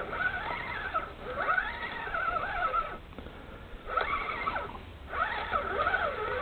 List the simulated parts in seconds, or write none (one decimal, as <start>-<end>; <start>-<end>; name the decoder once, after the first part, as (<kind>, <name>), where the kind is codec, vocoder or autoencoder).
1.6-4.4 (vocoder, BigVGAN v2); 4.9-5.5